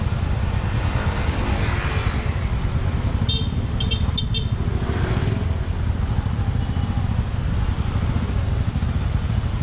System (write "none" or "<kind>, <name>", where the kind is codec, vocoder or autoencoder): none